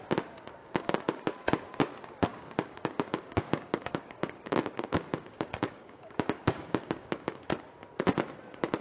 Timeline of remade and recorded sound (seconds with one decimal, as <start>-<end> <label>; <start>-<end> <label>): 0.0-0.6 recorded; 0.6-1.2 remade; 1.2-2.3 recorded; 2.3-7.3 remade; 7.3-8.8 recorded